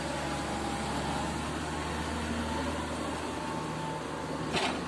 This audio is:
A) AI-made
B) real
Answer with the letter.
B